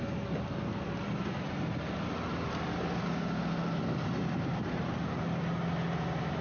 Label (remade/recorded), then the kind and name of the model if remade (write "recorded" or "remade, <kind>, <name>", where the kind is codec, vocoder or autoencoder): recorded